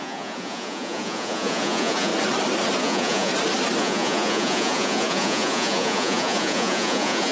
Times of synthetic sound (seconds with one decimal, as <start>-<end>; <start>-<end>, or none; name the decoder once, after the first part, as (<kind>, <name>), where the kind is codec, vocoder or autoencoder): 0.0-2.1 (vocoder, Vocos); 2.8-3.3; 3.8-7.3